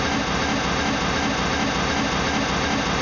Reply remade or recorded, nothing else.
recorded